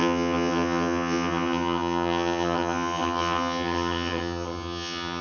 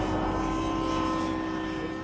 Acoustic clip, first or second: second